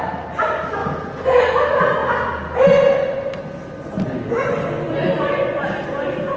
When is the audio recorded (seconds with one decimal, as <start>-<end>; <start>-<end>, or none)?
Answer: 0.0-0.8; 1.4-6.4